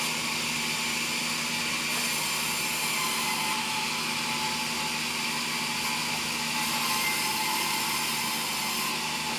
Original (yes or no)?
yes